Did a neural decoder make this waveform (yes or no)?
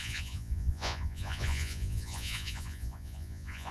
yes